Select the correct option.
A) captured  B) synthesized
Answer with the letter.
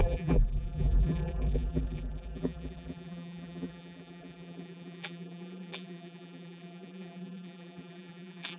B